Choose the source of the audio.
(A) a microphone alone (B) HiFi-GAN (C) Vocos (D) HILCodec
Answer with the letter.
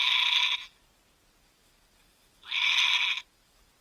A